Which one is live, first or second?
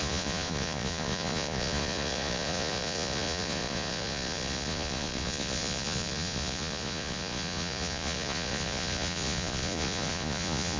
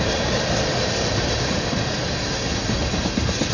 second